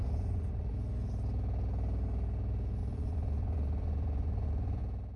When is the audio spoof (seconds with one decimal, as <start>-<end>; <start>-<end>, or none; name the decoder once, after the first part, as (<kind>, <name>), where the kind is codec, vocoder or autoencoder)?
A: 0.0-0.7 (vocoder, Vocos); 2.8-4.8